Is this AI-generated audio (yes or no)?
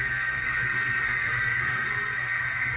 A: yes